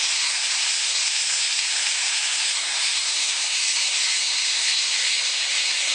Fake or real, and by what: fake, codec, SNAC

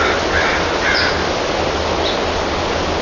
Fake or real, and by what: real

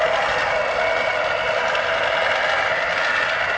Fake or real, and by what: real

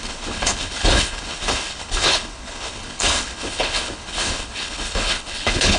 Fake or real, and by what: fake, codec, HILCodec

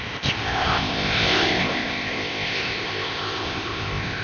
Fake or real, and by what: fake, codec, ZipCodec